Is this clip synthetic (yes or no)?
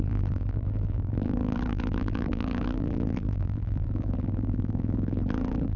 yes